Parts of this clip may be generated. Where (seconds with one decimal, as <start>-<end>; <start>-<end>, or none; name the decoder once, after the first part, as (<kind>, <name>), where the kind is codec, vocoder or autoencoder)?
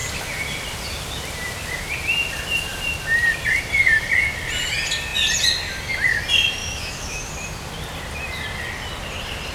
6.6-7.3 (autoencoder, DAC-VAE)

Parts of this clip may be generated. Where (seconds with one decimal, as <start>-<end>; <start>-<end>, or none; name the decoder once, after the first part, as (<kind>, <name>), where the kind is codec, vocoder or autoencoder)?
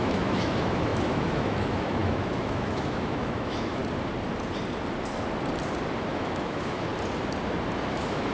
0.0-3.8 (autoencoder, DAC-VAE); 6.1-6.9; 7.9-8.3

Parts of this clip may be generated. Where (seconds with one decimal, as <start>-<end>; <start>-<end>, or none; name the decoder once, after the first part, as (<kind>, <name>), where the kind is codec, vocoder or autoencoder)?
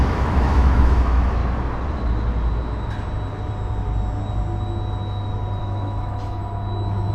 0.0-1.4 (autoencoder, DAC-VAE); 5.6-6.4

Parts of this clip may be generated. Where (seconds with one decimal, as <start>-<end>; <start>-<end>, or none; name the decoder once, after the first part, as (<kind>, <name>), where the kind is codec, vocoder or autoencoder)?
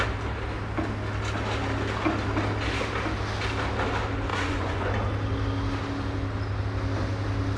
4.3-4.9 (vocoder, Vocos)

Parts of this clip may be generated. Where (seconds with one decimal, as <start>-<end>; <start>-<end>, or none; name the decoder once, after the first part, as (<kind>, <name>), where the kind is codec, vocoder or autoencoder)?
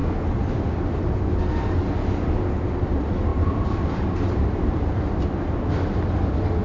3.3-5.4 (vocoder, BigVGAN v2)